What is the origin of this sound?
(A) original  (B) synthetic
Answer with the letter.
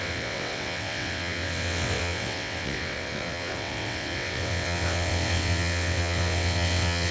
B